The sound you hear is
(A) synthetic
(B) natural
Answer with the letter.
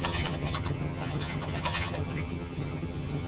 A